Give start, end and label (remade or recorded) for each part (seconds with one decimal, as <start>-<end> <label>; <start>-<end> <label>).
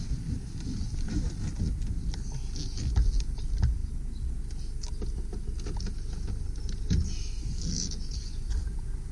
0.0-9.1 recorded